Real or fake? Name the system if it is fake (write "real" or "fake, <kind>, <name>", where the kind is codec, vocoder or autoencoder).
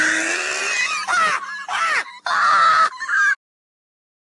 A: real